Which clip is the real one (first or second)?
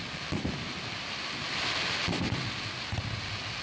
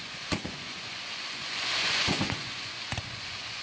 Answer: first